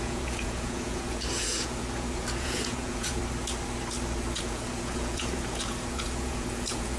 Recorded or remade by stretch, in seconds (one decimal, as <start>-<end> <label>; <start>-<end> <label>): 0.0-3.2 remade; 3.2-4.4 recorded; 4.4-7.0 remade

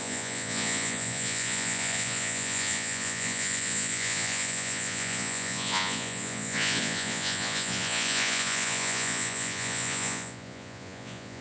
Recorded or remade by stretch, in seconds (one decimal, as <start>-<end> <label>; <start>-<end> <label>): 0.0-11.4 remade

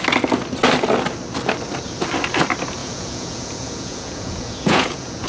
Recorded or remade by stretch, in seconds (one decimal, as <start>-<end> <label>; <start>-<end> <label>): 0.0-2.8 recorded; 2.8-5.3 remade

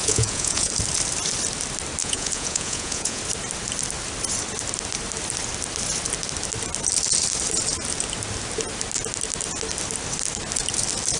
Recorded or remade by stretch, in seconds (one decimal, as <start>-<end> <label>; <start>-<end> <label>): 0.0-0.7 remade; 0.7-2.0 recorded; 2.0-3.2 remade; 3.2-11.2 recorded

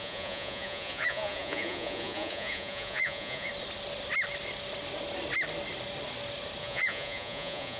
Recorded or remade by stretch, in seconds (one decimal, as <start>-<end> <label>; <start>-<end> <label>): 0.0-3.5 remade; 3.5-6.6 recorded; 6.6-7.8 remade

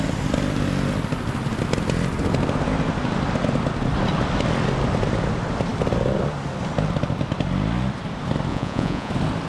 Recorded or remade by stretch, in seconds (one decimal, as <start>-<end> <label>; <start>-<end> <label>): 0.0-8.5 recorded; 8.5-9.1 remade; 9.1-9.5 recorded

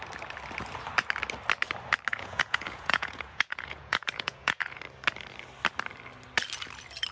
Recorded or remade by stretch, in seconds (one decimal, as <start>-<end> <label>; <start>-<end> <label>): 0.0-2.1 recorded; 2.1-4.8 remade; 4.8-7.1 recorded